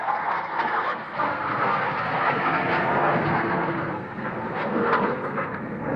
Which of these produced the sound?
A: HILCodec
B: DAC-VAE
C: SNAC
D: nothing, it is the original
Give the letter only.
C